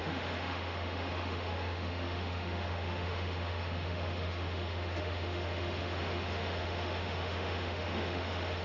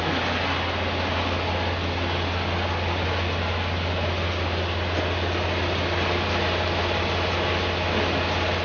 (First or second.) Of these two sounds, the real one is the second